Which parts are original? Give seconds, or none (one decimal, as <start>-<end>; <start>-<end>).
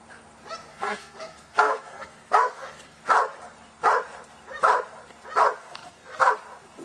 0.0-0.7; 3.0-5.6; 6.3-6.8